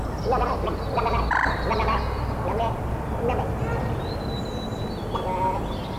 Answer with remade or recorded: recorded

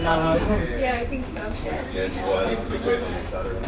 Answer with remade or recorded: remade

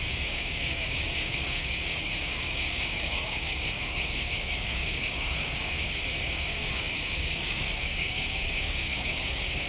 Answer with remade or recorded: remade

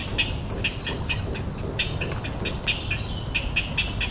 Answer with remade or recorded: recorded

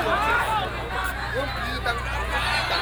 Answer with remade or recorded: recorded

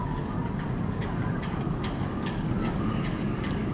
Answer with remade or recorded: remade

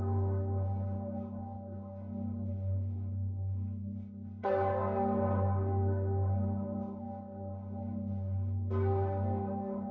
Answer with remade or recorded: remade